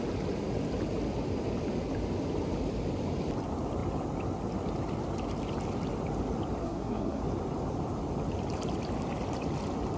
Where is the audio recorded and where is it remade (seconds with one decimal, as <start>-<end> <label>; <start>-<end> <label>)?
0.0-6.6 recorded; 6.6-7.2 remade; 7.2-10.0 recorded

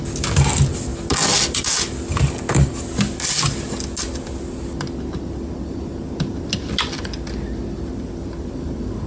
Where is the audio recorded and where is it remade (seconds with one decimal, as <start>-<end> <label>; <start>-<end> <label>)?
0.0-9.1 recorded

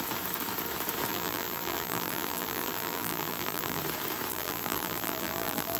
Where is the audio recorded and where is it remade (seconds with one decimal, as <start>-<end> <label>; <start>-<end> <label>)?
0.0-1.1 recorded; 1.1-3.8 remade; 3.8-4.3 recorded; 4.3-5.8 remade

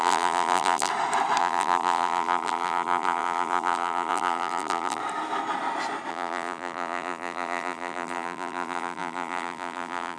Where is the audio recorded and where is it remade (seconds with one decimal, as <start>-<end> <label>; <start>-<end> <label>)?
0.0-0.9 remade; 0.9-1.4 recorded; 1.4-5.0 remade; 5.0-6.1 recorded; 6.1-10.2 remade

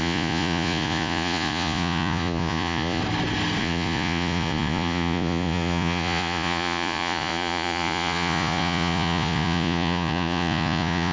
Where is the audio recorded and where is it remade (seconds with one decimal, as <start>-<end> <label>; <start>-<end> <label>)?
0.0-3.0 remade; 3.0-3.6 recorded; 3.6-11.1 remade

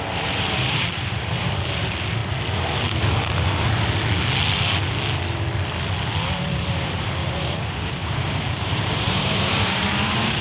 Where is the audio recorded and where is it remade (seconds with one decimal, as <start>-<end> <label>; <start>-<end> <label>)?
0.0-2.2 remade; 2.2-6.3 recorded; 6.3-10.4 remade

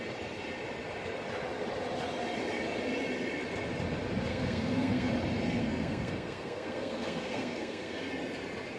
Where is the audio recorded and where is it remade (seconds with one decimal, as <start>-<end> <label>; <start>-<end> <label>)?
0.0-4.3 recorded; 4.3-5.1 remade; 5.1-5.6 recorded; 5.6-8.1 remade; 8.1-8.8 recorded